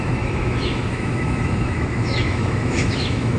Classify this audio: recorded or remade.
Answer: remade